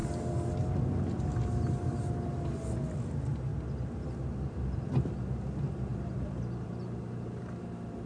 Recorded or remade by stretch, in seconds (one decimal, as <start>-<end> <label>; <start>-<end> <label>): 0.0-8.1 recorded